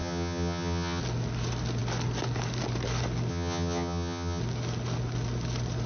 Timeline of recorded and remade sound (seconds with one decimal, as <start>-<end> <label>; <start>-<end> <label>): 0.0-1.0 remade; 1.0-3.3 recorded; 3.3-4.4 remade; 4.4-5.9 recorded